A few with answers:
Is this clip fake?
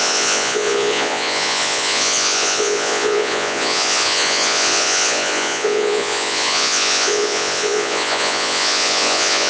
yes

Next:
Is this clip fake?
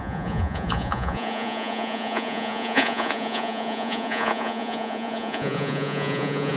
yes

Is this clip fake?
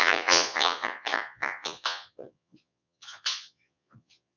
yes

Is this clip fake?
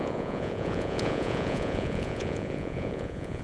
yes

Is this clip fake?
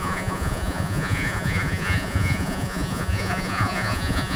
yes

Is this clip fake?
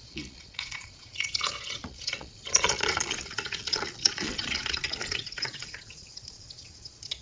yes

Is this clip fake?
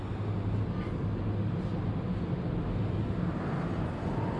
no